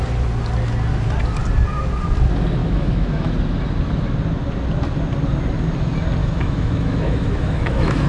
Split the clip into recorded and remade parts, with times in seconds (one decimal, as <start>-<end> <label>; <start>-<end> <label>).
0.0-2.6 recorded; 2.6-3.3 remade; 3.3-6.2 recorded; 6.2-8.1 remade